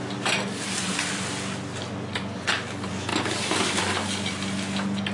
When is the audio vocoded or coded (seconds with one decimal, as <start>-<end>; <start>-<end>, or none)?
none